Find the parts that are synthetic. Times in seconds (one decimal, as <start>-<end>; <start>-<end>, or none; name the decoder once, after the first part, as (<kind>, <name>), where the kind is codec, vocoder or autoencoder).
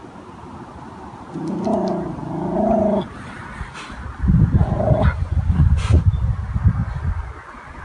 5.2-6.2 (vocoder, Vocos); 6.8-7.8